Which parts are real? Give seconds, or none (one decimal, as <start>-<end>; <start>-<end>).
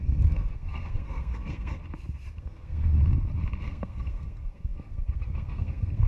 1.8-2.4; 2.9-3.6